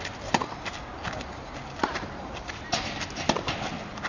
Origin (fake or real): real